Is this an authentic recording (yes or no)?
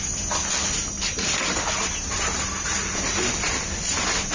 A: yes